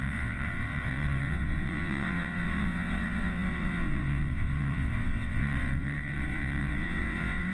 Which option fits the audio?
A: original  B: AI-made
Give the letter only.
B